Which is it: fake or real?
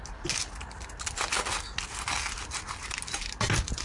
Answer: real